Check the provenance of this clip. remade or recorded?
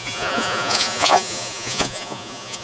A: remade